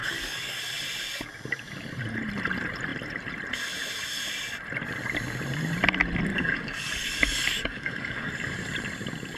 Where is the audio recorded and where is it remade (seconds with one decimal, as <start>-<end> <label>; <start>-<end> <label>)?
0.0-0.6 remade; 0.6-6.3 recorded; 6.3-8.3 remade; 8.3-9.4 recorded